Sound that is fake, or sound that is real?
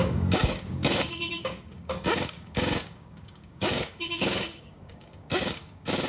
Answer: fake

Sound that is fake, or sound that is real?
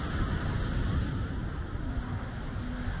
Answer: real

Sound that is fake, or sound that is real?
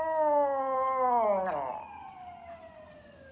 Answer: real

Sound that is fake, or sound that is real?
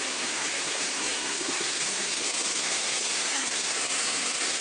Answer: fake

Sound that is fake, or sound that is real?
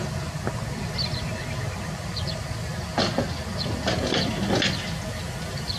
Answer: real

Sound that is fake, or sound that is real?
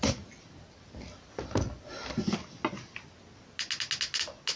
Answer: real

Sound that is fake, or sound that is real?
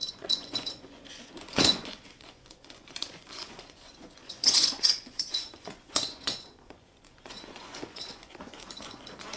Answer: fake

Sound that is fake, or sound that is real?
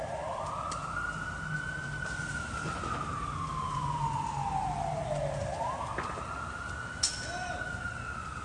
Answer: real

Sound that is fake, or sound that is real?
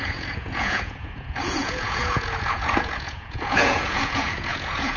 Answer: fake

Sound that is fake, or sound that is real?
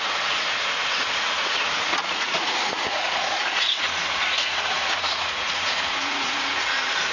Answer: fake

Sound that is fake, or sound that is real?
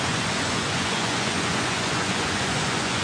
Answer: fake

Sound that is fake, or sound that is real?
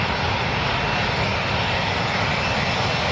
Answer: real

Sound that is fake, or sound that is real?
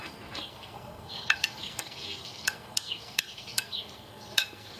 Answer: fake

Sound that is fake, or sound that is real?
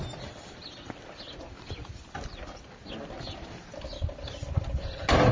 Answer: real